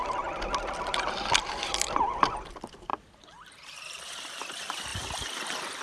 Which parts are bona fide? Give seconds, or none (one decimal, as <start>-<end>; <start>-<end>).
2.9-4.4